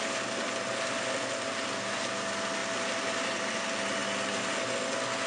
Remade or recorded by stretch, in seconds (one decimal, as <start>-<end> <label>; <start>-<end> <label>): 0.0-5.3 recorded